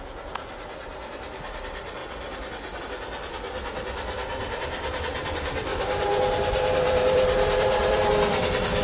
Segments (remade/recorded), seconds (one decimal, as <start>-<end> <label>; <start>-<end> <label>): 0.0-4.2 recorded; 4.2-5.3 remade; 5.3-5.7 recorded; 5.7-8.1 remade; 8.1-8.8 recorded